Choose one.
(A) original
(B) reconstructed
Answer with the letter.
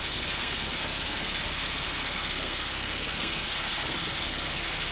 B